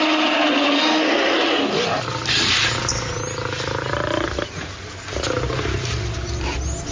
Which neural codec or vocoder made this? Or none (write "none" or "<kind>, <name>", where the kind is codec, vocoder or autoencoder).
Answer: none